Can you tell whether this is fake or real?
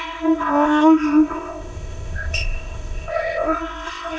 fake